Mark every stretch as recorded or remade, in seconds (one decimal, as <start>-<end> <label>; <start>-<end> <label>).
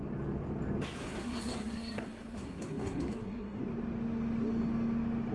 0.0-1.0 recorded; 1.0-3.6 remade; 3.6-5.3 recorded